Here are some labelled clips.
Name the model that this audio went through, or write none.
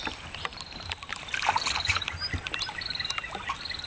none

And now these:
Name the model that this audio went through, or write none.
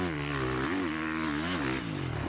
none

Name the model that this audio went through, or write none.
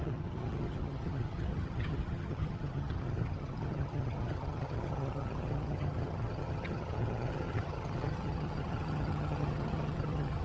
vocoder, HiFi-GAN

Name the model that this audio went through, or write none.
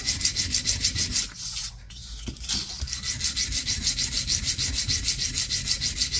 none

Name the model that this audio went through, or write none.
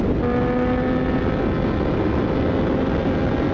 none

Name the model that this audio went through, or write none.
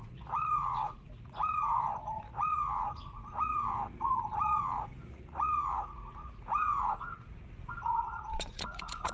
vocoder, Vocos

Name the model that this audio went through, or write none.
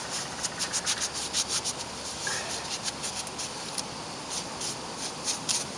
none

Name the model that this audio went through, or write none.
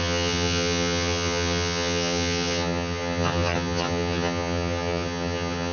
vocoder, HiFi-GAN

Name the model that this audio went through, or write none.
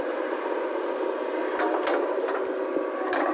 none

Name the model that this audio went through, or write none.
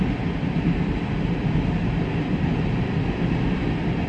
none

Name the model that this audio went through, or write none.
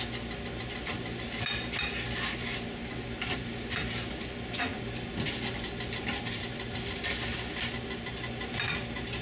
none